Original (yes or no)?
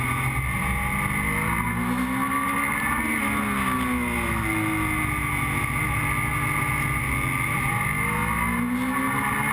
yes